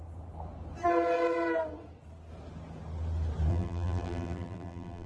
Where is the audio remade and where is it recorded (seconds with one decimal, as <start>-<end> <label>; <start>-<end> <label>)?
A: 0.0-3.5 recorded; 3.5-5.1 remade